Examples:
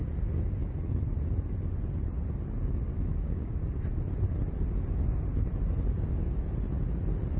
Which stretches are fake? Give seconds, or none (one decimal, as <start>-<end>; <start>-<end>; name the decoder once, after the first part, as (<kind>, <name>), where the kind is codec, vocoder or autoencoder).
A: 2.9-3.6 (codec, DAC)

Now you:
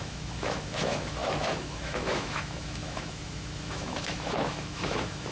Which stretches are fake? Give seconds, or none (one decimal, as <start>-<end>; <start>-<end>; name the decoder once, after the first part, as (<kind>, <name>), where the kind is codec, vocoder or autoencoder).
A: 0.0-5.3 (autoencoder, DAC-VAE)

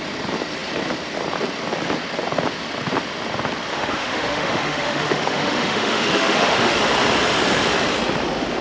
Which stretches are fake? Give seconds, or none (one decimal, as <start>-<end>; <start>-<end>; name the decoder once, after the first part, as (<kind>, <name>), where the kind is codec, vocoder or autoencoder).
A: 3.7-6.8 (autoencoder, DAC-VAE)